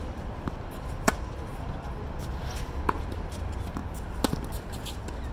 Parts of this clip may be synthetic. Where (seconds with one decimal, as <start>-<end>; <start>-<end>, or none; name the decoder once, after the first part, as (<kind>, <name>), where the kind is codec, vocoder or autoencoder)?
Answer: 0.0-1.5 (vocoder, BigVGAN v2); 3.0-3.8